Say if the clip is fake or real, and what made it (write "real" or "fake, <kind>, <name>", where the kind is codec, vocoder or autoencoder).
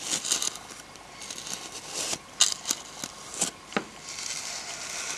real